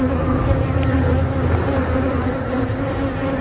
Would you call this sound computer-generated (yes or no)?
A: no